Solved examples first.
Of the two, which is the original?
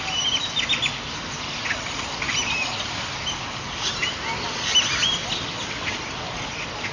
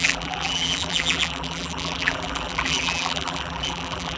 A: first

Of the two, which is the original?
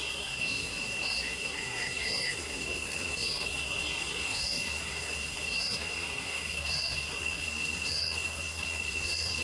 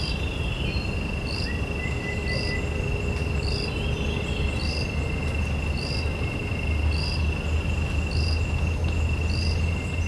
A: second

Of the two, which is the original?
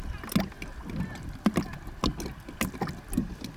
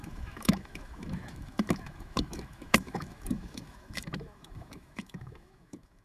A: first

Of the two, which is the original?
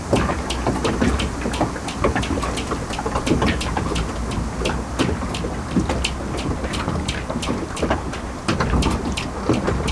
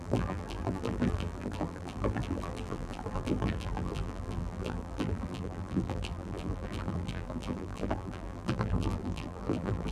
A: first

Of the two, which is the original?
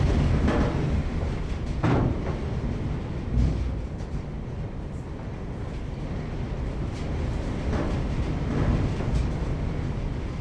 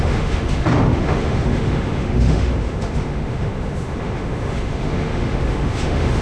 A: first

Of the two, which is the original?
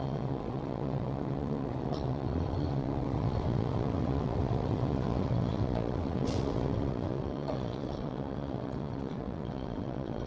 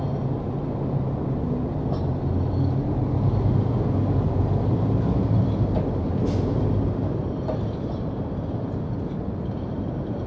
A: second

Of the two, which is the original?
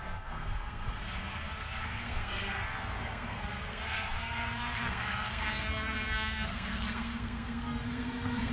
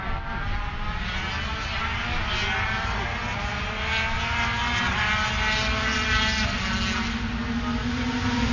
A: second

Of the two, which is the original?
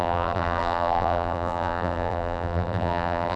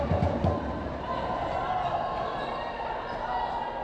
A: second